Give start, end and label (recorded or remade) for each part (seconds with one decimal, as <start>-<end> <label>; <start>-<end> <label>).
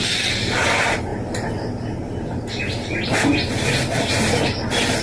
0.0-5.0 recorded